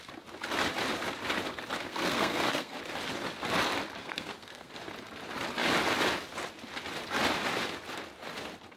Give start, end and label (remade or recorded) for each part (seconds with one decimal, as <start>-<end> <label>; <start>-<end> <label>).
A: 0.0-1.9 recorded; 1.9-2.8 remade; 2.8-4.0 recorded; 4.0-4.7 remade; 4.7-8.8 recorded